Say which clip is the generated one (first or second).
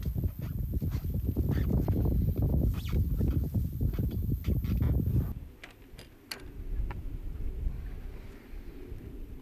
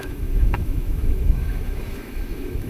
second